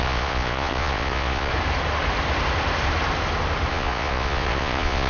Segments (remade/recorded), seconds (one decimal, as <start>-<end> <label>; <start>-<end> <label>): 0.0-1.5 remade; 1.5-3.7 recorded; 3.7-5.1 remade